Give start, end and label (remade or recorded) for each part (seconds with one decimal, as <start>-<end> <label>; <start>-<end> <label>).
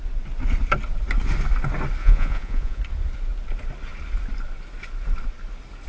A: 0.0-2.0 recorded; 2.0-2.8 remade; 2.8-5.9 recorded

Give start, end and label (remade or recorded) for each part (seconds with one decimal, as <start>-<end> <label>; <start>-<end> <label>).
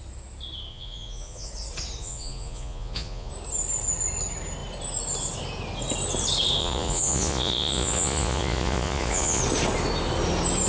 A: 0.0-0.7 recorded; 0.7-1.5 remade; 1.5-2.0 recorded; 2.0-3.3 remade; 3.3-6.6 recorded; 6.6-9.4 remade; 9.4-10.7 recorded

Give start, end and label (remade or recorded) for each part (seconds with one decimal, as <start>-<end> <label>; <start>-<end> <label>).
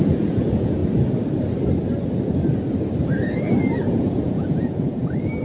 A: 0.0-0.8 remade; 0.8-3.9 recorded; 3.9-5.4 remade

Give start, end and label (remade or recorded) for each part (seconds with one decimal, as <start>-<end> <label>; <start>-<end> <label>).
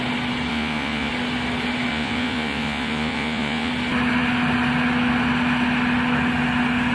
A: 0.0-0.5 recorded; 0.5-1.1 remade; 1.1-1.9 recorded; 1.9-3.7 remade; 3.7-6.9 recorded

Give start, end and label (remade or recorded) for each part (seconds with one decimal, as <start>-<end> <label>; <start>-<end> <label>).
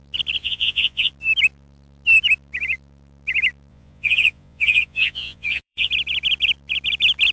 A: 0.0-0.4 recorded; 0.4-1.1 remade; 1.1-3.7 recorded; 3.7-5.9 remade; 5.9-7.3 recorded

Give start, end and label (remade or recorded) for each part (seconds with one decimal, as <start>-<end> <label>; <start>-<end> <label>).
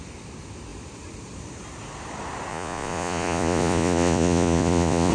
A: 0.0-2.5 recorded; 2.5-5.1 remade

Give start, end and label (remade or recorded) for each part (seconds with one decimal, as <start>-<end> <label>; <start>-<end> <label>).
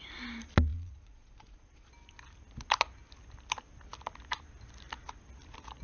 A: 0.0-0.7 recorded; 0.7-1.9 remade; 1.9-5.8 recorded